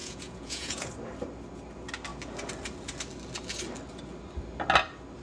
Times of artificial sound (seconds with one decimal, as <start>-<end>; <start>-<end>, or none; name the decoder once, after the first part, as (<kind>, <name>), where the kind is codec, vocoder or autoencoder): 0.0-0.9 (vocoder, Vocos)